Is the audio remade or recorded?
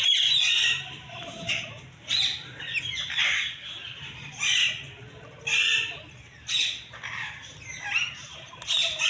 recorded